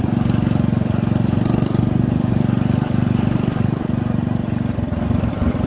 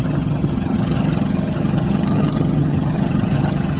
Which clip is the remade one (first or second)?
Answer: second